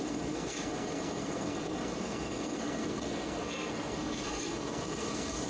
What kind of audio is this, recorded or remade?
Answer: remade